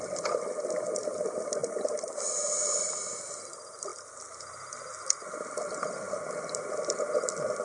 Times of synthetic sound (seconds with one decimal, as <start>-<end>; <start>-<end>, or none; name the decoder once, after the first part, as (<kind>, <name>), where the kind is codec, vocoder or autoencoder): 3.9-4.4 (vocoder, BigVGAN v2)